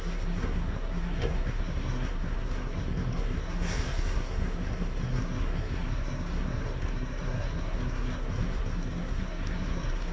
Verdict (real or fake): fake